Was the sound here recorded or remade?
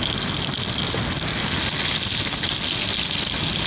recorded